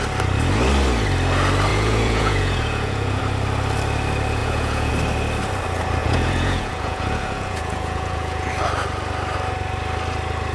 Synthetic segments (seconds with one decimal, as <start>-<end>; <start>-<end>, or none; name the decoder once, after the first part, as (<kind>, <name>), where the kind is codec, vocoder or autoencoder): 1.7-3.2 (vocoder, Vocos); 4.4-4.9; 6.0-8.5